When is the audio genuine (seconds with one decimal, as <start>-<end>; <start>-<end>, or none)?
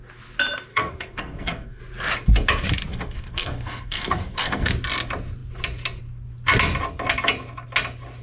0.0-0.7; 1.8-2.9; 4.7-8.2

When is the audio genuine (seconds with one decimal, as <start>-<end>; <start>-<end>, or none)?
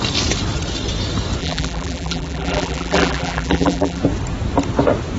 0.0-1.4; 4.0-5.2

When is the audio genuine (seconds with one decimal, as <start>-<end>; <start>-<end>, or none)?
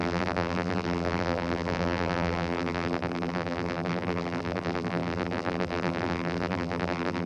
none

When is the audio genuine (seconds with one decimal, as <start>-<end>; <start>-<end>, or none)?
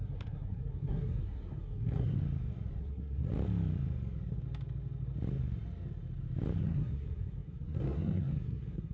2.2-2.8; 3.3-6.6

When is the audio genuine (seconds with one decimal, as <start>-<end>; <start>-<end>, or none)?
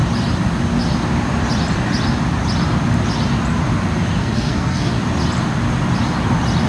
0.0-4.2; 4.9-6.7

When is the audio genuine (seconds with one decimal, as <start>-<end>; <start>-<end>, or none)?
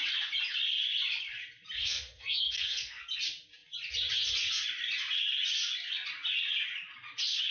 0.0-1.8; 3.0-7.5